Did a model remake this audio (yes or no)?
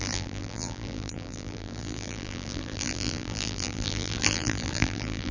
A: yes